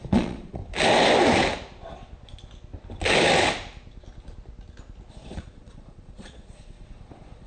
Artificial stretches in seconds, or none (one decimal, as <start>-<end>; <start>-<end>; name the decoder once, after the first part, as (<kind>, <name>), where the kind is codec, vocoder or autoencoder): 0.0-0.6 (vocoder, Vocos); 5.1-7.5